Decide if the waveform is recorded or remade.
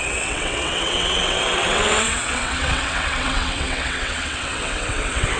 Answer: remade